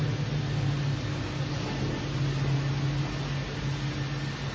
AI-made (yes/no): no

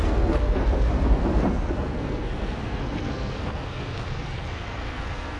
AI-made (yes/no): yes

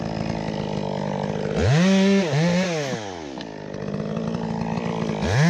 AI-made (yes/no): no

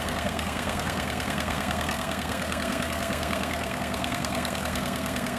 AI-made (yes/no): yes